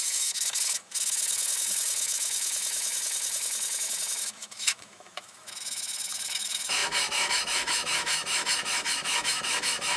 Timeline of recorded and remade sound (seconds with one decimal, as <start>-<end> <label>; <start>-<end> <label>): 0.0-10.0 remade